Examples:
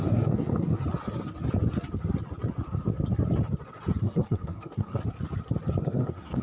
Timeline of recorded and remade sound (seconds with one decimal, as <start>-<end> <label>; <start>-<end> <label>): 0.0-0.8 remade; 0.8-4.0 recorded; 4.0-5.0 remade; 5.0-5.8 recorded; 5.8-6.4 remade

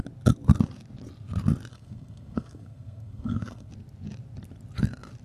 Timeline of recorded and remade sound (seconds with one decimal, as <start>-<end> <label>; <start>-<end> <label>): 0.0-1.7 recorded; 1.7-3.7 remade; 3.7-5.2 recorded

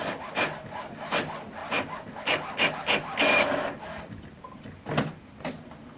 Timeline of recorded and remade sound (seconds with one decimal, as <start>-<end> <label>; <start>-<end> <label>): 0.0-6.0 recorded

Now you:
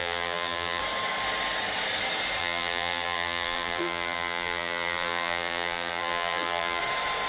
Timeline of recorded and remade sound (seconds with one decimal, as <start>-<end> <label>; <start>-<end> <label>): 0.0-0.8 remade; 0.8-2.4 recorded; 2.4-6.8 remade; 6.8-7.3 recorded

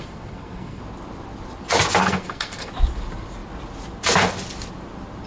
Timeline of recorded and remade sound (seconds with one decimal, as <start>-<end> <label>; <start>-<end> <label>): 0.0-0.8 remade; 0.8-2.0 recorded; 2.0-2.7 remade; 2.7-5.3 recorded

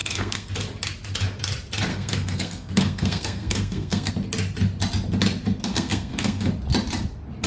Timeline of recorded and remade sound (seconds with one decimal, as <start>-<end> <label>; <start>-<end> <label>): 0.0-0.5 remade; 0.5-1.9 recorded; 1.9-4.1 remade; 4.1-5.7 recorded; 5.7-6.5 remade; 6.5-7.5 recorded

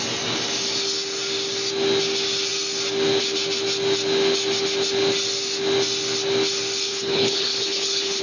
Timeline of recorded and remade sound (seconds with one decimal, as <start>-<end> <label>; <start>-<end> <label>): 0.0-6.9 recorded; 6.9-8.2 remade